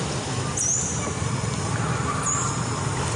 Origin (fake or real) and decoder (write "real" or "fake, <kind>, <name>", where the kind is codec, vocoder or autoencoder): real